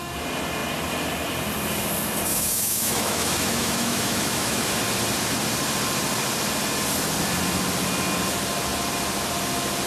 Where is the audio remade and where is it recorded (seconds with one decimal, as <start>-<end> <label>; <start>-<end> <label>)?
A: 0.0-2.3 recorded; 2.3-4.7 remade; 4.7-9.9 recorded